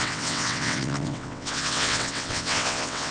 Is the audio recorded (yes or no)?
no